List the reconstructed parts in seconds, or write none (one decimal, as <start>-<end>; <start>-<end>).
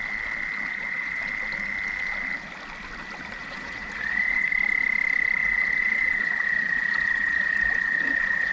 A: 0.7-1.2; 3.4-4.5; 5.4-8.5